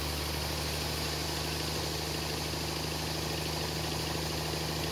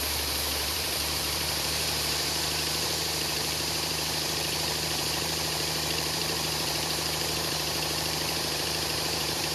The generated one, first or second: second